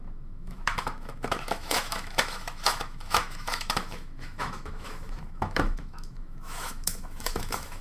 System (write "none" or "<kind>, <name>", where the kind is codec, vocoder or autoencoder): autoencoder, DAC-VAE